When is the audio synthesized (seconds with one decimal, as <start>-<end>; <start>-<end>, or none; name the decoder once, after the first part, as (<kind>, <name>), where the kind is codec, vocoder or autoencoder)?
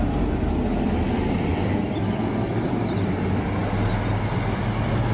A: 1.5-2.3 (vocoder, BigVGAN v2)